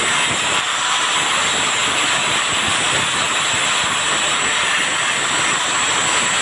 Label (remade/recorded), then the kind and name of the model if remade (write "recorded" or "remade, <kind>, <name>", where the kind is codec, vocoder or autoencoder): recorded